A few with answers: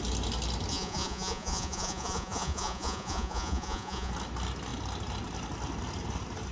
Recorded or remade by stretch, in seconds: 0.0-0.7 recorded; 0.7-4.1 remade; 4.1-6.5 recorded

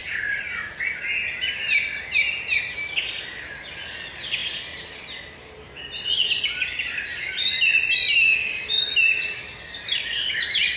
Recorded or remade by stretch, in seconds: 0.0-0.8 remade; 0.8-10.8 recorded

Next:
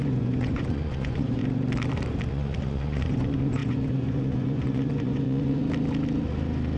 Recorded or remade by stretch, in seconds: 0.0-1.4 remade; 1.4-2.3 recorded; 2.3-5.6 remade; 5.6-6.8 recorded

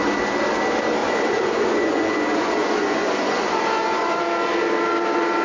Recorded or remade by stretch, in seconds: 0.0-1.0 recorded; 1.0-4.2 remade; 4.2-5.4 recorded

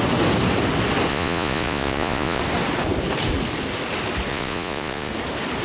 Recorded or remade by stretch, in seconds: 0.0-1.1 recorded; 1.1-2.4 remade; 2.4-4.3 recorded; 4.3-5.1 remade; 5.1-5.6 recorded